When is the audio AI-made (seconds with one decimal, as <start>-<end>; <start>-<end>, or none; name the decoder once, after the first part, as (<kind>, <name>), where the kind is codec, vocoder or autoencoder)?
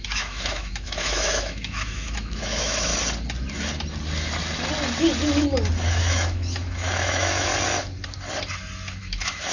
0.0-2.9 (autoencoder, DAC-VAE); 5.9-7.5; 9.0-9.5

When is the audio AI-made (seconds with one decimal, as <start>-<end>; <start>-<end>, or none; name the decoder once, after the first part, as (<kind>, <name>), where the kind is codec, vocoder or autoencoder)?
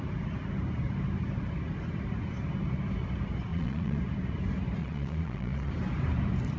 3.5-4.0 (vocoder, Vocos); 4.8-5.7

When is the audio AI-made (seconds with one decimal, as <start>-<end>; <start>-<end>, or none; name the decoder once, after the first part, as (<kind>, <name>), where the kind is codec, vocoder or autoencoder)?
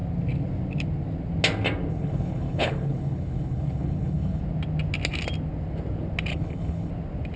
1.9-4.4 (codec, HILCodec); 6.3-6.9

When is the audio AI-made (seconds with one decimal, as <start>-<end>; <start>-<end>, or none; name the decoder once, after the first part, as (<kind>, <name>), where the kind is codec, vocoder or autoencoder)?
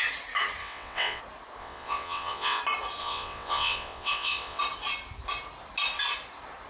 0.6-1.2 (vocoder, WaveNeXt); 1.6-2.6; 3.0-4.6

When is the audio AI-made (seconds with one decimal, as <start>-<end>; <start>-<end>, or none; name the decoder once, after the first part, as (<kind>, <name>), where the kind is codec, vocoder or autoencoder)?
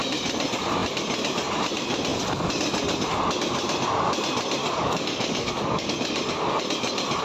4.6-5.9 (codec, DAC)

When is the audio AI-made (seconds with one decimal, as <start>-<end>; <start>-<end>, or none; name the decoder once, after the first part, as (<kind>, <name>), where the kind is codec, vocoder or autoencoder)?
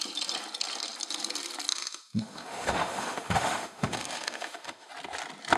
1.7-4.9 (autoencoder, DAC-VAE)